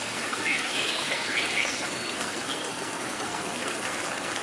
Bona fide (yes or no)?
no